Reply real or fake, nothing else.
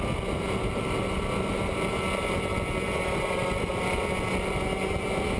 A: real